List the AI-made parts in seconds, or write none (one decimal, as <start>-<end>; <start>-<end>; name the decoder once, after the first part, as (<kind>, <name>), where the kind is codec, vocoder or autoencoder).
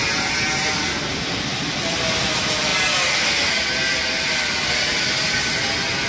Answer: none